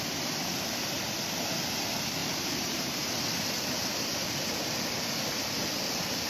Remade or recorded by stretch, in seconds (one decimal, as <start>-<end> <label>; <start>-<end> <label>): 0.0-0.5 recorded; 0.5-1.0 remade; 1.0-2.2 recorded; 2.2-3.2 remade; 3.2-6.3 recorded